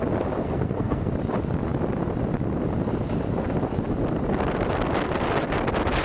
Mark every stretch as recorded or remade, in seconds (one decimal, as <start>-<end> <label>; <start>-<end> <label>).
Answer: 0.0-0.4 recorded; 0.4-1.1 remade; 1.1-6.0 recorded